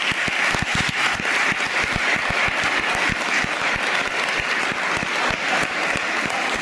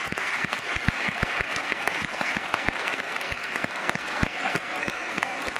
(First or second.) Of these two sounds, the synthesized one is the second